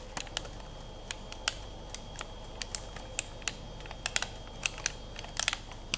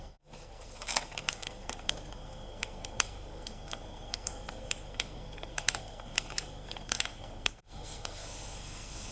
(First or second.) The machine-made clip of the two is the second